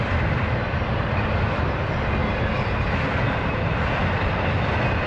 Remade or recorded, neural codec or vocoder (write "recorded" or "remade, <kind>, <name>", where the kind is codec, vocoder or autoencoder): recorded